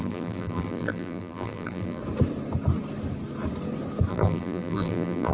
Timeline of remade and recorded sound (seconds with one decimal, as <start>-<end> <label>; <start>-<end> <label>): 0.0-2.0 remade; 2.0-4.1 recorded; 4.1-5.3 remade